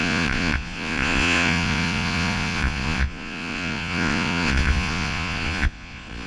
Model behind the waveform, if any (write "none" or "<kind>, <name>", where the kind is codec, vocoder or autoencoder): vocoder, Vocos